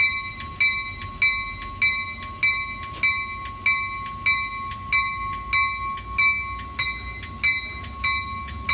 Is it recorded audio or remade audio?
recorded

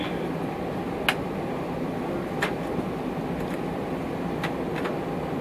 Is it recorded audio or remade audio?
recorded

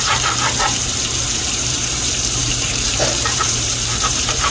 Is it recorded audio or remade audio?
remade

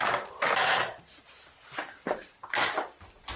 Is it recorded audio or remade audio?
remade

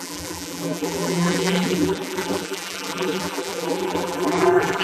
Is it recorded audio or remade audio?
remade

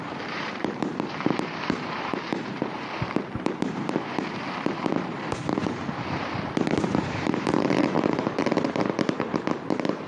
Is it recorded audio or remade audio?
remade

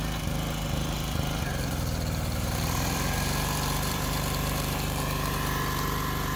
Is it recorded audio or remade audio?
remade